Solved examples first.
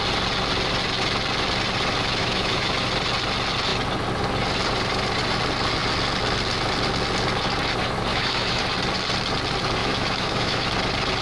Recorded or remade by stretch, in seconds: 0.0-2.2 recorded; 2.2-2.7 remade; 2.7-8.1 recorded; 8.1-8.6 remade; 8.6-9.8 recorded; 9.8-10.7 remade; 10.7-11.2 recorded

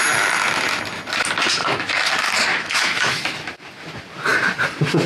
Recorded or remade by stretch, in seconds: 0.0-1.6 recorded; 1.6-2.1 remade; 2.1-2.5 recorded; 2.5-3.2 remade; 3.2-5.1 recorded

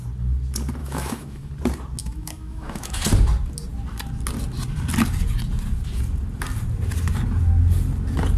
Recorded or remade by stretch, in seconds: 0.0-0.8 recorded; 0.8-1.5 remade; 1.5-2.0 recorded; 2.0-3.0 remade; 3.0-8.4 recorded

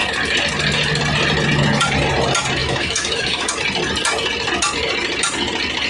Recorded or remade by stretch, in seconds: 0.0-2.6 recorded; 2.6-3.5 remade; 3.5-5.9 recorded

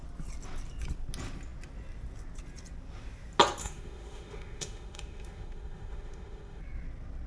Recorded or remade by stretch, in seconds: 0.0-3.6 recorded; 3.6-6.6 remade; 6.6-7.3 recorded